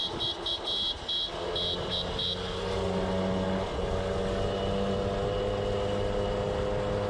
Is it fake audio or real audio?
real